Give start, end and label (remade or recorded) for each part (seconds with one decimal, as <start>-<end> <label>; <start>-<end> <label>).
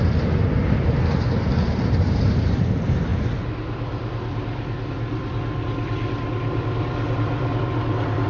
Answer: 0.0-8.3 remade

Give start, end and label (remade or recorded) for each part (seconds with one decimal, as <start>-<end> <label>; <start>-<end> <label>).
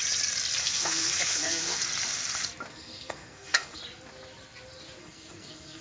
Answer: 0.0-0.6 recorded; 0.6-1.8 remade; 1.8-2.7 recorded; 2.7-3.8 remade; 3.8-5.0 recorded; 5.0-5.8 remade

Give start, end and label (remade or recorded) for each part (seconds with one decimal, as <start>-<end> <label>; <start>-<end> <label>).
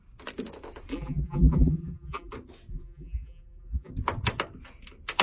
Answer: 0.0-0.9 recorded; 0.9-2.3 remade; 2.3-2.7 recorded; 2.7-3.9 remade; 3.9-5.2 recorded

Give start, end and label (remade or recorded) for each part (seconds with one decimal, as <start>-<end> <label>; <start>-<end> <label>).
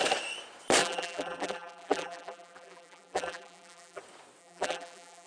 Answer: 0.0-0.8 recorded; 0.8-4.0 remade; 4.0-4.4 recorded; 4.4-5.3 remade